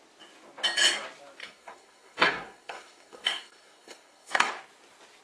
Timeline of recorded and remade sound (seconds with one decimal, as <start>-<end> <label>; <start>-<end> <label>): 0.0-1.4 recorded; 1.4-4.5 remade; 4.5-5.2 recorded